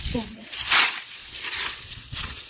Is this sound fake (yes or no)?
yes